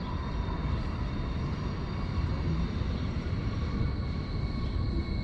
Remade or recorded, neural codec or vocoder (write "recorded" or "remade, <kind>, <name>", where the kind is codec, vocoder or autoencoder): recorded